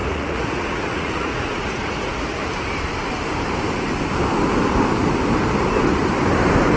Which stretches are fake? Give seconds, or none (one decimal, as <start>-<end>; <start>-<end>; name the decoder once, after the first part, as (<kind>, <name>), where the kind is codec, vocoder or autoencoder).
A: 0.0-2.4 (vocoder, Vocos)